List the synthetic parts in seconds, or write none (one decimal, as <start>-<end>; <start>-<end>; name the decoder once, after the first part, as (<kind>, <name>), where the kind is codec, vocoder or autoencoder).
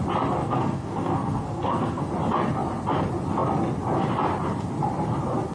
0.4-2.1 (codec, SNAC)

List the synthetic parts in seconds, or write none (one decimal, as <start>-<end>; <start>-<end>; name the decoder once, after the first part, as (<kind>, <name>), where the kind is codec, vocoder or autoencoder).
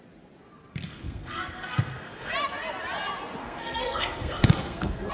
0.7-2.3 (codec, SNAC); 3.4-5.1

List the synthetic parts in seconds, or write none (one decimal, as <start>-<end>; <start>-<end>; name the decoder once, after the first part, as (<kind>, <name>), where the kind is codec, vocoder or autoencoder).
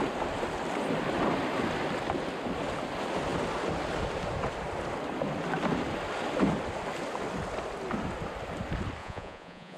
9.0-9.8 (vocoder, Vocos)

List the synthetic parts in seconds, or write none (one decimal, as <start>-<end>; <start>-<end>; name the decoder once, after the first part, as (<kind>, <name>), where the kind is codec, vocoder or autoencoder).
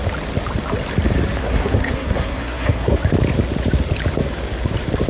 1.4-3.0 (codec, SNAC)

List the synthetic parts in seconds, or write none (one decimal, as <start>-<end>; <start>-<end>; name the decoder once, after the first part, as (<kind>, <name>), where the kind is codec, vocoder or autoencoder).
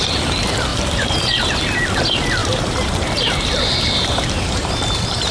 0.7-1.6 (vocoder, BigVGAN v2); 2.4-4.7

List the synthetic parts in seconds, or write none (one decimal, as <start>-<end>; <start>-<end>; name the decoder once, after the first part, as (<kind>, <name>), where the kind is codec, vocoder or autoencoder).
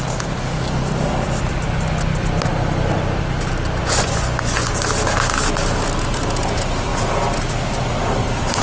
3.8-4.7 (vocoder, Vocos)